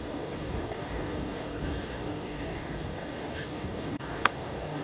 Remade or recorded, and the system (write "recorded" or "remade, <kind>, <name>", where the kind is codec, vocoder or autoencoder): remade, codec, DAC